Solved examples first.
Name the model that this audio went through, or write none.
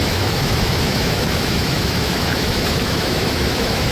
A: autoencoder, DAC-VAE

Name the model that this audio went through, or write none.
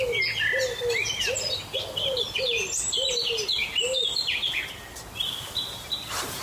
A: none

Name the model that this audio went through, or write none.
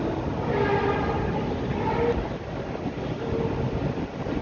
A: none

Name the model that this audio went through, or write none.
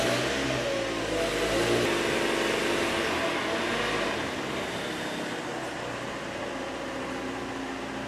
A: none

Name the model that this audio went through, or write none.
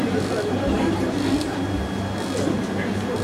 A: none